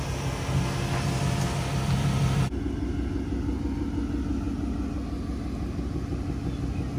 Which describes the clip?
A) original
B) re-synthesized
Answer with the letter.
A